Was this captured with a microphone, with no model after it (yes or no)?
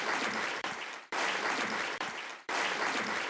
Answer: no